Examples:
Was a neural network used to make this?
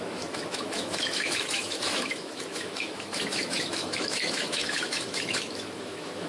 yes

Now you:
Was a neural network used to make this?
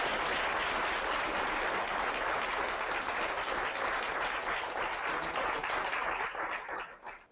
no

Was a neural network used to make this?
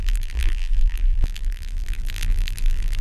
yes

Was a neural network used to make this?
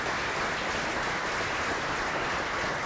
no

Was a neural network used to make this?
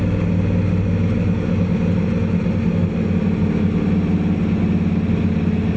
no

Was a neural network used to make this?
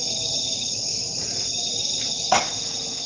no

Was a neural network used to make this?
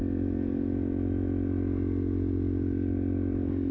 no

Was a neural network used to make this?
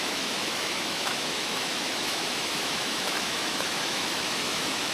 yes